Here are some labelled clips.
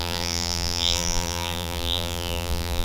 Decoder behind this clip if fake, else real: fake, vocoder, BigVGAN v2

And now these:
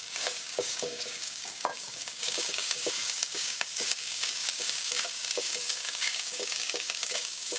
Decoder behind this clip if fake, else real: fake, codec, DAC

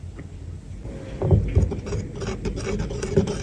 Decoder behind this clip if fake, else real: real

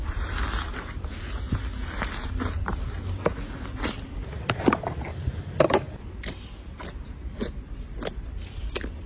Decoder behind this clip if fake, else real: real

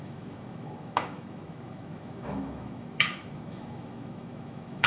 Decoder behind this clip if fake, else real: fake, autoencoder, DAC-VAE